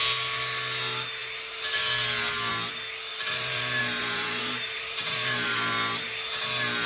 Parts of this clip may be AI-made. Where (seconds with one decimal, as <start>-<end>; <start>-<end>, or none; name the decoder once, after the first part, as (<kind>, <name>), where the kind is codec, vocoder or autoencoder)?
3.1-5.7 (vocoder, BigVGAN v2)